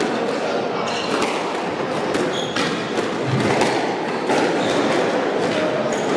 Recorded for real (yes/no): yes